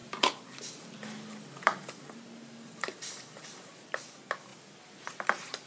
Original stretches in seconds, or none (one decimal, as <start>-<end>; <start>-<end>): 0.0-1.7; 3.7-5.7